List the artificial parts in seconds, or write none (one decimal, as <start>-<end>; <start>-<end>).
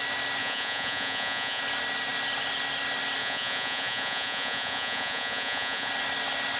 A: 0.4-1.6; 3.2-5.9